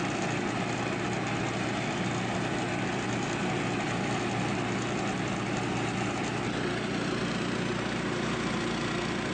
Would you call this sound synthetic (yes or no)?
no